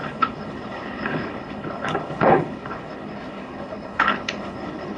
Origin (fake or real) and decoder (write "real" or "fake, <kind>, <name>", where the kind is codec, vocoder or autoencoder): fake, codec, HILCodec